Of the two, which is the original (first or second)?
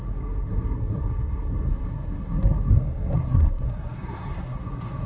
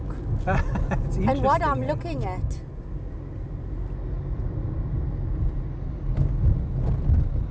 second